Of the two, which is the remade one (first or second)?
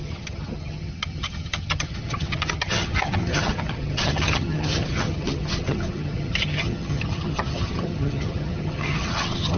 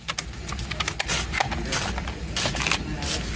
first